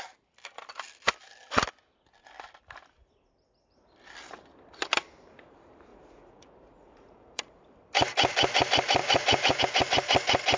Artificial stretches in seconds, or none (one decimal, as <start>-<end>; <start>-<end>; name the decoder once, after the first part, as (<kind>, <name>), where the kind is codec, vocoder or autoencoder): 5.9-7.6 (vocoder, Vocos); 9.0-9.6